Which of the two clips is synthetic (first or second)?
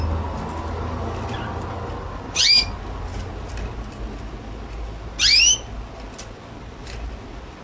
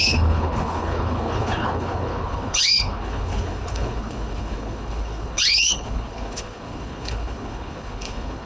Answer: second